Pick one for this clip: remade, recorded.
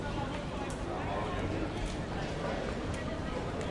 recorded